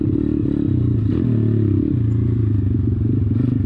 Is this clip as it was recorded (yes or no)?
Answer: yes